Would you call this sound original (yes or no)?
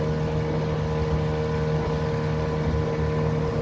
yes